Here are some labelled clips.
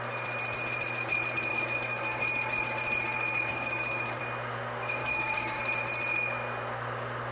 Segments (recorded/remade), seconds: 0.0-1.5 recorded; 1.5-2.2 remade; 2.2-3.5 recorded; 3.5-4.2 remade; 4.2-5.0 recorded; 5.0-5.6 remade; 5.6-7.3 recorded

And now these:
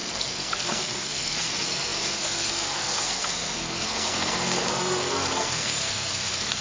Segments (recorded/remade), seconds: 0.0-6.6 remade

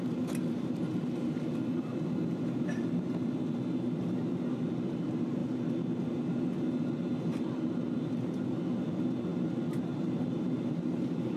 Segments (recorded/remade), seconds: 0.0-11.4 recorded

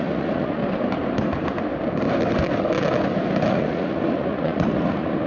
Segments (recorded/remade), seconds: 0.0-0.6 remade; 0.6-3.5 recorded; 3.5-5.3 remade

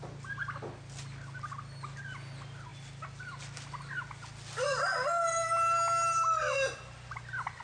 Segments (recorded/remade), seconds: 0.0-7.6 recorded